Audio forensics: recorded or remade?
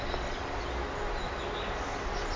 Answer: recorded